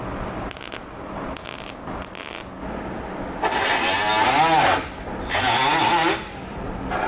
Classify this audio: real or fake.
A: real